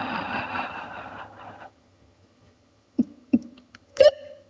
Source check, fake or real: fake